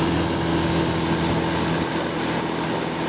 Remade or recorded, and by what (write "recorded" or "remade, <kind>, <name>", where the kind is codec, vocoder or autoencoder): recorded